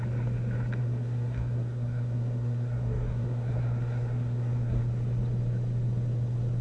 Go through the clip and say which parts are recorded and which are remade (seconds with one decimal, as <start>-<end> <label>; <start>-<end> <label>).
0.0-0.8 recorded; 0.8-4.8 remade; 4.8-6.6 recorded